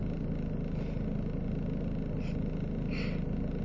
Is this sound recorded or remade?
recorded